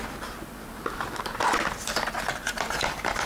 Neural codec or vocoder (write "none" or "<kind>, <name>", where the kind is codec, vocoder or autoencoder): none